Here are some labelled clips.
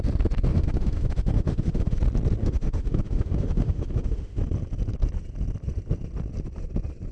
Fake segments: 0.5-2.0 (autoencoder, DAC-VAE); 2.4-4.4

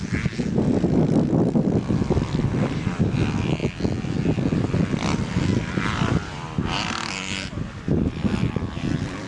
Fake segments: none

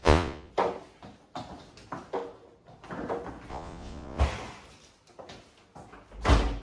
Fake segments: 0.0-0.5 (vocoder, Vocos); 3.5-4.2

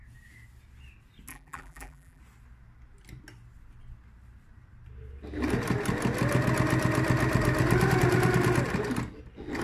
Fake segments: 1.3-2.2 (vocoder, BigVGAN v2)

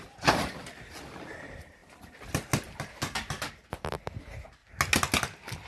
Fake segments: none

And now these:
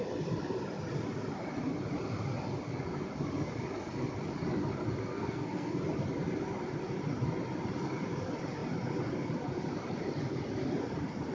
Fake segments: 5.1-5.8 (codec, SNAC)

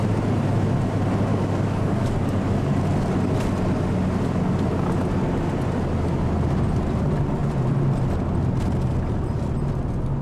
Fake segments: 1.3-2.8 (codec, DAC)